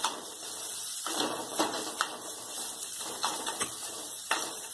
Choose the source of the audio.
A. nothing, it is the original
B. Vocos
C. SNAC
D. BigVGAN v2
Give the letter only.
D